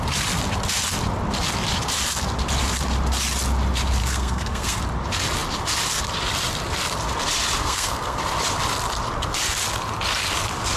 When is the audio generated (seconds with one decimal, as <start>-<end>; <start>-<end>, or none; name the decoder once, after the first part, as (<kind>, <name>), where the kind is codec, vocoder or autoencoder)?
4.0-4.8 (codec, SNAC); 7.6-8.2